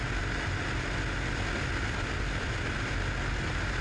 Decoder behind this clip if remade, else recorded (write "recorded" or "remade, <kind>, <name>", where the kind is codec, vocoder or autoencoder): recorded